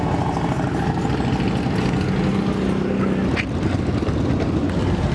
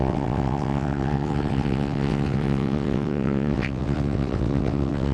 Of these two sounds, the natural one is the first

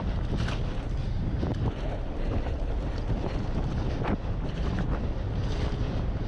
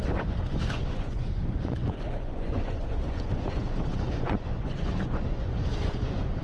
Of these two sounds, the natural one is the first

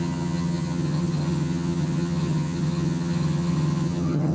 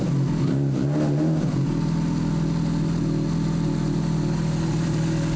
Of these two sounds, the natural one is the second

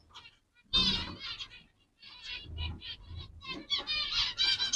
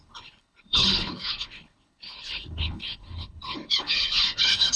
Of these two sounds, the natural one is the first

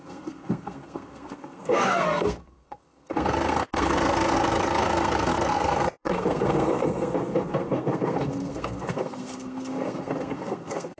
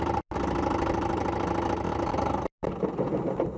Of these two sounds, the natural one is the second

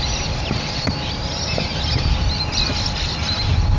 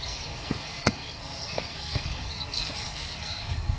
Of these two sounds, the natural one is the first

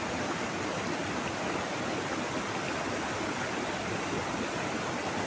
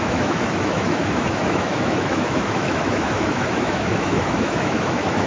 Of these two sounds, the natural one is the first